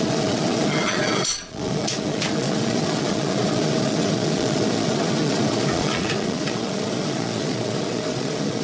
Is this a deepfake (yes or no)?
yes